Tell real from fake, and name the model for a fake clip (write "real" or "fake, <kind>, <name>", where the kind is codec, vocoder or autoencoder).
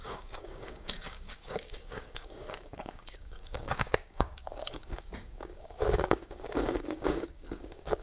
fake, codec, DAC